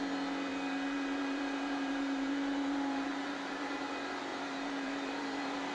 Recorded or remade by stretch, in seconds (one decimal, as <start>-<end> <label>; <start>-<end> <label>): 0.0-0.5 recorded; 0.5-3.9 remade; 3.9-4.3 recorded; 4.3-5.7 remade